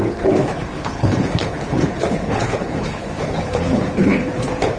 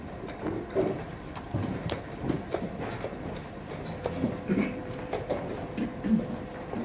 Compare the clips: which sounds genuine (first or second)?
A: second